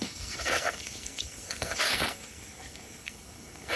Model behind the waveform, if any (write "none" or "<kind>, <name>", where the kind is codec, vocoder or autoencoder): codec, SNAC